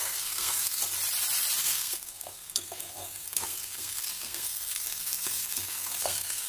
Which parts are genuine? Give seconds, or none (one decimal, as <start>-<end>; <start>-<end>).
0.8-1.6